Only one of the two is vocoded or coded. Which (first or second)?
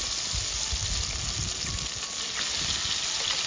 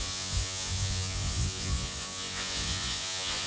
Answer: second